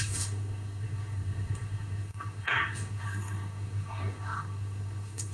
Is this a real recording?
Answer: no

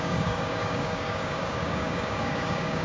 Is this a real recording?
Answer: no